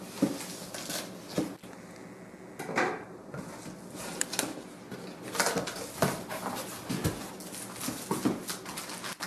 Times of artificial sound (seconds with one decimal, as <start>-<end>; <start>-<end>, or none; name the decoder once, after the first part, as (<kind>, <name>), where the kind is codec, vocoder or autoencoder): none